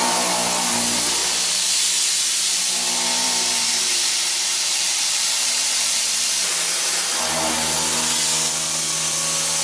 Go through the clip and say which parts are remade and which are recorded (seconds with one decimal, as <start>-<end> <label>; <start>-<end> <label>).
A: 0.0-1.2 recorded; 1.2-2.7 remade; 2.7-3.2 recorded; 3.2-6.7 remade; 6.7-9.6 recorded